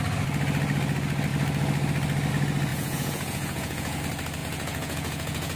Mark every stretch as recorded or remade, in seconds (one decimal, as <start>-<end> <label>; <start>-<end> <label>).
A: 0.0-2.7 recorded; 2.7-4.0 remade; 4.0-4.4 recorded; 4.4-5.6 remade